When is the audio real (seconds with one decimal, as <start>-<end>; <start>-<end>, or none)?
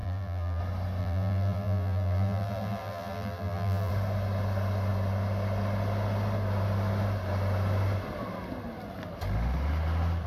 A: 0.6-1.0; 3.9-10.3